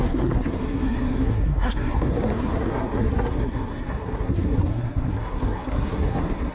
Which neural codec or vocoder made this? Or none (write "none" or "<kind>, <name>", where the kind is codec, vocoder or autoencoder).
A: codec, SNAC